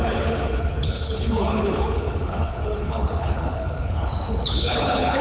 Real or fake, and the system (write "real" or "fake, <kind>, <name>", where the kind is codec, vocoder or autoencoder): fake, codec, HILCodec